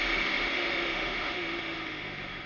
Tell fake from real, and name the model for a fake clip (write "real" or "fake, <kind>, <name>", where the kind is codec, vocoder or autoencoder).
fake, autoencoder, DAC-VAE